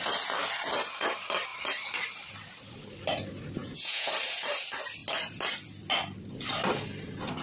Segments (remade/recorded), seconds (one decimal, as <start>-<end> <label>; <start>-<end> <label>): 0.0-3.6 recorded; 3.6-4.1 remade; 4.1-7.4 recorded